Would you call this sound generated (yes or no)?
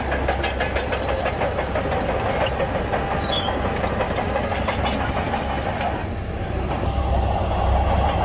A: no